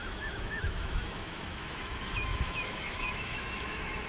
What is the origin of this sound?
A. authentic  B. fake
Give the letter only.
B